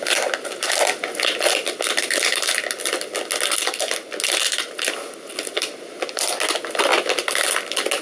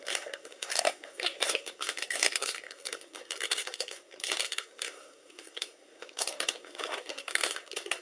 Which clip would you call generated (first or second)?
second